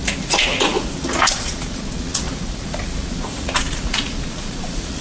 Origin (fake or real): fake